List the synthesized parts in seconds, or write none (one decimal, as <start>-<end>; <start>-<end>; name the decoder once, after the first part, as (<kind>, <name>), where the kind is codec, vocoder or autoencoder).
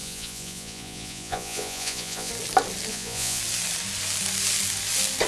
0.0-2.3 (vocoder, Vocos); 2.9-3.4